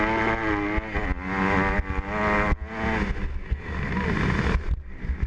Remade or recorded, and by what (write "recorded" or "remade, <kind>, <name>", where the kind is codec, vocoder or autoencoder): recorded